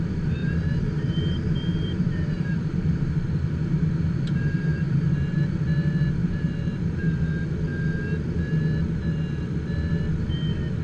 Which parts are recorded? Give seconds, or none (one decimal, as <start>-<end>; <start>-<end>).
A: 0.0-0.4; 5.0-6.2; 7.1-10.8